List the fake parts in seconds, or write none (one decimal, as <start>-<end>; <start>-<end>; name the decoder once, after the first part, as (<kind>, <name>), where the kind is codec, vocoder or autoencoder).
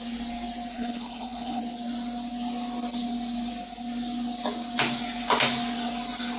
0.7-1.6 (codec, HILCodec)